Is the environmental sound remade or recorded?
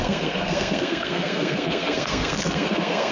remade